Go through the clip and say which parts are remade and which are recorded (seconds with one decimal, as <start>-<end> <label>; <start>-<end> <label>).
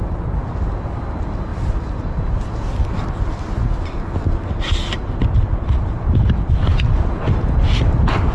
0.0-8.3 recorded